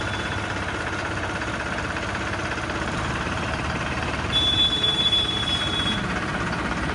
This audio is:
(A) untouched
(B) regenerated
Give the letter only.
B